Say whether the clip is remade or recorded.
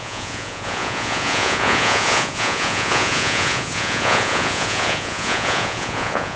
remade